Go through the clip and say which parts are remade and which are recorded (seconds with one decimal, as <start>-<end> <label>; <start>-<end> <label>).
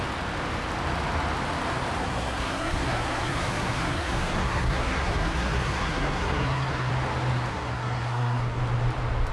0.0-2.0 recorded; 2.0-6.9 remade; 6.9-7.5 recorded; 7.5-8.6 remade; 8.6-9.3 recorded